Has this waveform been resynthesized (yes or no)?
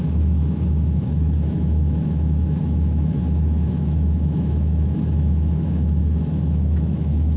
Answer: yes